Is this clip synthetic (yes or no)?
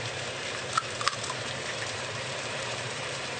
yes